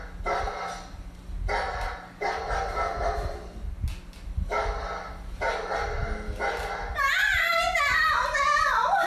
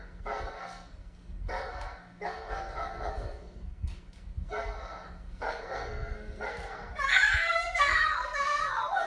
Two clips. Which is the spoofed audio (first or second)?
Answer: second